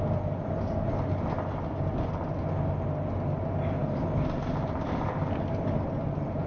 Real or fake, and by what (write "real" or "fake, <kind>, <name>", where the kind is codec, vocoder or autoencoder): real